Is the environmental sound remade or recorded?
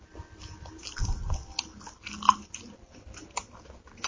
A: recorded